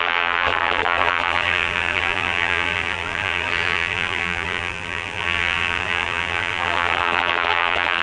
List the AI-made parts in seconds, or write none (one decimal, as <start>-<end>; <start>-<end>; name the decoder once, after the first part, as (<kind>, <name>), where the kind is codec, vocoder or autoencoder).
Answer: 0.0-8.0 (vocoder, BigVGAN v2)